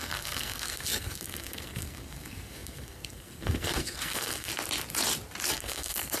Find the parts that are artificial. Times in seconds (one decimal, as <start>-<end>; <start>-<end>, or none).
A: 0.0-4.5; 5.5-6.2